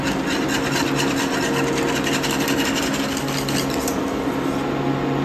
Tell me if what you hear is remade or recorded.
recorded